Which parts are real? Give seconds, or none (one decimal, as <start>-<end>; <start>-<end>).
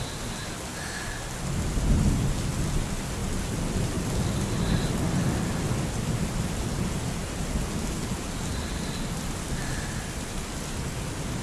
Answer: 0.0-11.4